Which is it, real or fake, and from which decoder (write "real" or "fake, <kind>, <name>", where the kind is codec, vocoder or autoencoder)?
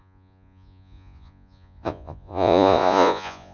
fake, vocoder, Vocos